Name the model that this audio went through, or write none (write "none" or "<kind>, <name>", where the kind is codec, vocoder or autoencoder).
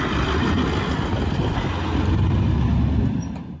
none